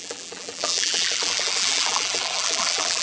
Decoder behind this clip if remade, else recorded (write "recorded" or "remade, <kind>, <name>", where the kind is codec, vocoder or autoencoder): remade, vocoder, BigVGAN v2